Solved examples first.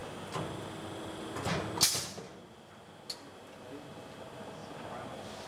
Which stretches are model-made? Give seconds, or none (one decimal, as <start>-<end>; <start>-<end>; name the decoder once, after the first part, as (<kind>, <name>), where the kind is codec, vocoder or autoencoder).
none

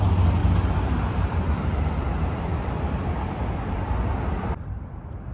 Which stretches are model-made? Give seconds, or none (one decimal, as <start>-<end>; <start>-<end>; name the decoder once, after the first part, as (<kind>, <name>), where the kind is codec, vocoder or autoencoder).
0.4-3.6 (vocoder, BigVGAN v2)

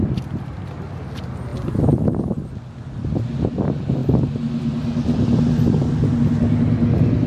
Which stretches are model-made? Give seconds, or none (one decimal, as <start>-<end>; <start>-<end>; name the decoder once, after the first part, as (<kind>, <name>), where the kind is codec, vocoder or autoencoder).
none

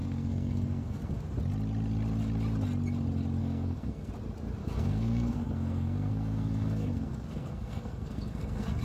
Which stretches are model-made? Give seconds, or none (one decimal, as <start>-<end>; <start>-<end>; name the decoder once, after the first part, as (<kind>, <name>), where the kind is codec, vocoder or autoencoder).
0.0-1.2 (codec, SNAC); 3.4-4.1; 4.6-8.8

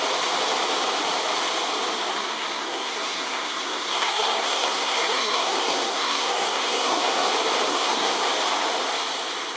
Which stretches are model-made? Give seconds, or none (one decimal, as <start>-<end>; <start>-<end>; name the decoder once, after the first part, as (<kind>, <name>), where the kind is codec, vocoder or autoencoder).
2.1-7.3 (codec, SNAC); 7.7-8.3